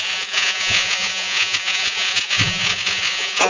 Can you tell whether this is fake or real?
fake